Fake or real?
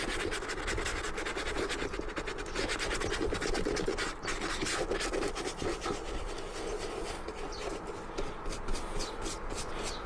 real